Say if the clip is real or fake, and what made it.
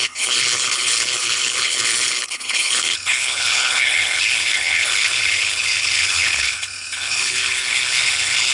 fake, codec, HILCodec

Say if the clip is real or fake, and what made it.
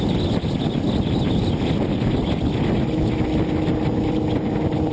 real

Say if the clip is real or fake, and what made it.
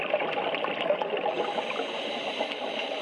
real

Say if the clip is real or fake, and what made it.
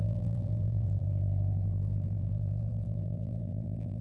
fake, vocoder, BigVGAN v2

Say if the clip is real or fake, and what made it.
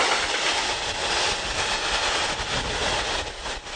real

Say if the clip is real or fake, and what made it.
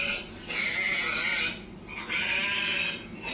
real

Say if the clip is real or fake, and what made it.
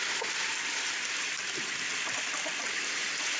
real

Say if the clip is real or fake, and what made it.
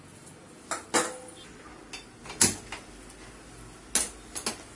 real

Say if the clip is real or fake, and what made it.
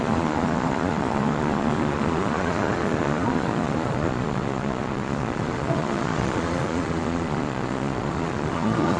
fake, vocoder, Vocos